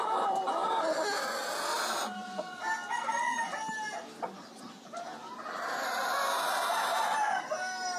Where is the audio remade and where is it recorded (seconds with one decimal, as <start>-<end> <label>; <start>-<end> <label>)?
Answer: 0.0-8.0 recorded